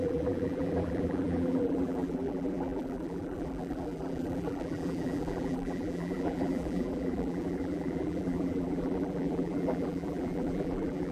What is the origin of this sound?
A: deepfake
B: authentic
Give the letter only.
A